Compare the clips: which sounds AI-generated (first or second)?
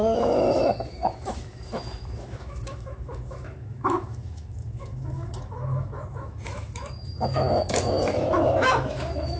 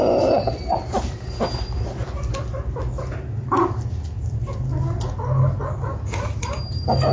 first